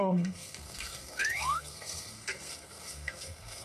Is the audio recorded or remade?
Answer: remade